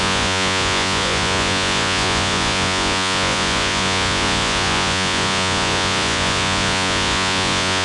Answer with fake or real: fake